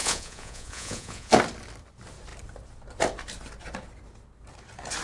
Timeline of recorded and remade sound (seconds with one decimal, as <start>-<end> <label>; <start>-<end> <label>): 0.0-1.3 remade; 1.3-5.0 recorded